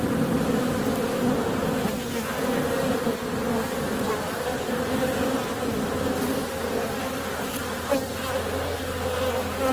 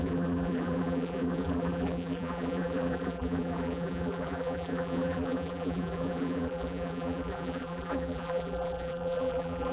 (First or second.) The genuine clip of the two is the first